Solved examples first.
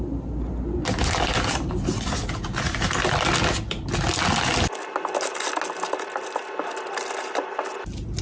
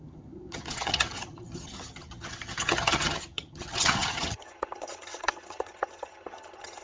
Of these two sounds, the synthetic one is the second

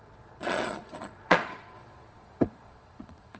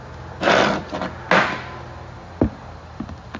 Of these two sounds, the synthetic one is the first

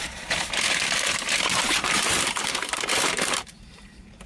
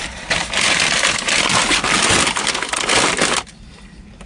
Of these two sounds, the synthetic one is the first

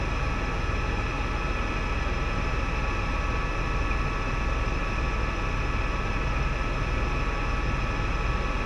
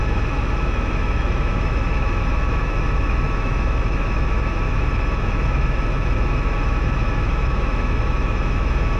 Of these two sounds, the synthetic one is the second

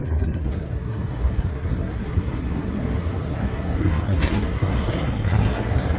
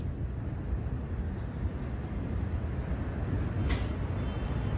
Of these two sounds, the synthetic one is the first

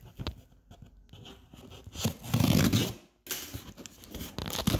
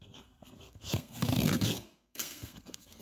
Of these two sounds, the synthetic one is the second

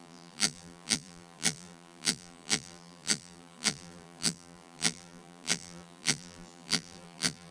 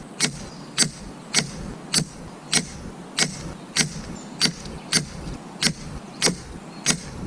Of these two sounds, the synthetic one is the first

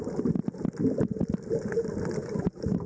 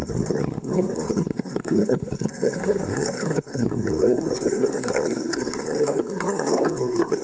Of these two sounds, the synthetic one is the second